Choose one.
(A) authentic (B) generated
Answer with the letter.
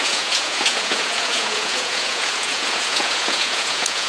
B